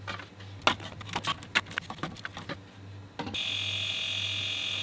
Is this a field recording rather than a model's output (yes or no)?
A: yes